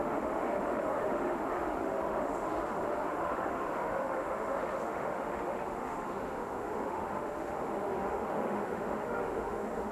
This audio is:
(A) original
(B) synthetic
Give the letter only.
B